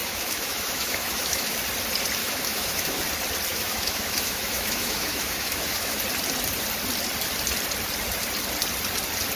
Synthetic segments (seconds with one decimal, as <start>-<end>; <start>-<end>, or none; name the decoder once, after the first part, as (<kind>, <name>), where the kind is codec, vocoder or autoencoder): 0.0-1.6 (autoencoder, DAC-VAE); 2.2-3.0; 3.5-6.0